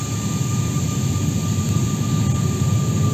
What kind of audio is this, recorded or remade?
recorded